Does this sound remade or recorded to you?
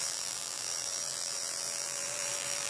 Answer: remade